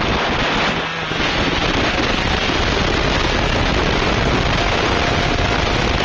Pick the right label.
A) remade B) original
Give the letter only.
B